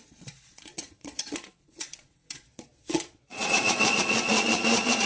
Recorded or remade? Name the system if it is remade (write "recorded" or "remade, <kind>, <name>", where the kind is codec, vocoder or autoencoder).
remade, vocoder, Vocos